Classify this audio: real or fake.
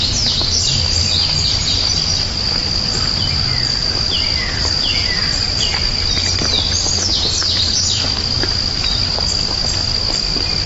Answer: real